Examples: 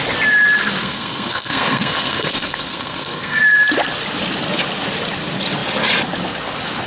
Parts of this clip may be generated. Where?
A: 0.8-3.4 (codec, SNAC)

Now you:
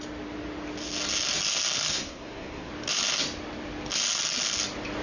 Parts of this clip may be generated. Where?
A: 1.9-2.7 (codec, SNAC)

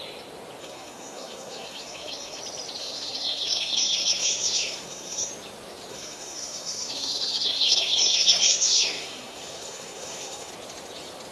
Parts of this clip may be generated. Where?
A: 0.6-2.4 (codec, SNAC); 2.8-5.3; 5.9-10.5

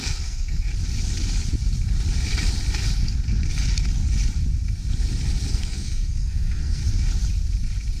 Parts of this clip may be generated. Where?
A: 0.0-0.7 (codec, SNAC); 5.5-6.8